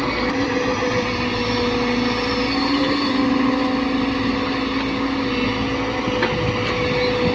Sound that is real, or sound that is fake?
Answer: real